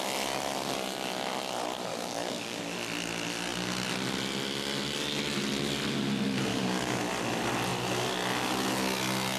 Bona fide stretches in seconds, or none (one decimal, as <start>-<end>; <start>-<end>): 0.0-1.9; 2.6-6.5; 7.0-9.4

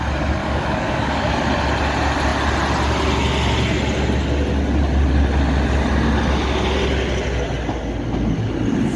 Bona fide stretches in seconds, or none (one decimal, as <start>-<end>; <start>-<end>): 0.0-0.4; 1.3-9.0

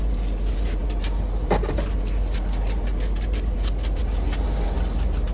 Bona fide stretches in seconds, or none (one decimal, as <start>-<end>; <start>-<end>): 0.0-5.3

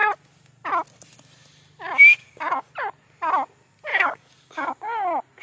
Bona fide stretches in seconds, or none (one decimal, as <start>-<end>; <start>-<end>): 0.0-2.2; 2.7-3.9; 4.7-5.4

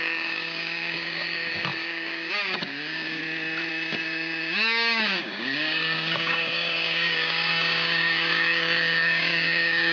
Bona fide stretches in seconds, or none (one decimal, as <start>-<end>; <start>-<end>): 3.2-3.7

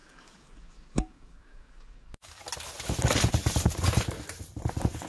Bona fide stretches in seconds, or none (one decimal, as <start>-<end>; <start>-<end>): 2.4-5.1

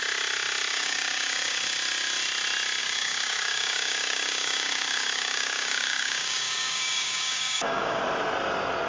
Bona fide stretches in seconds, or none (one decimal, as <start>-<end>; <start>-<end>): 0.0-0.7; 1.6-2.8; 8.0-8.9